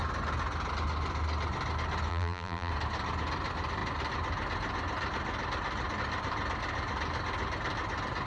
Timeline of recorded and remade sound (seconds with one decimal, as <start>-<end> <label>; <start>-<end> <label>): 0.0-2.1 recorded; 2.1-2.7 remade; 2.7-8.3 recorded